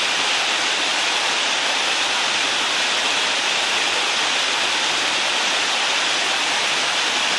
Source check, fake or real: real